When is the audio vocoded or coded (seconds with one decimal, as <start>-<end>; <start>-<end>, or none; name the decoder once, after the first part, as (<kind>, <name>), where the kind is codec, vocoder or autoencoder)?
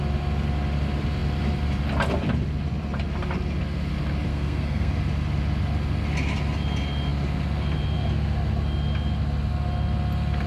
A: 4.3-4.9 (codec, SNAC)